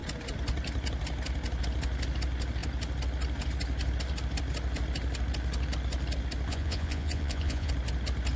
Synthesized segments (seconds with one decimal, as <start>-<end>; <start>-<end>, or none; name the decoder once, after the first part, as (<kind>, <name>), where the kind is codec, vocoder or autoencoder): 6.5-7.7 (vocoder, Vocos)